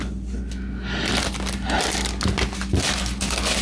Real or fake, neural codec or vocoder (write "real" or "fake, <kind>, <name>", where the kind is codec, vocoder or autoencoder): real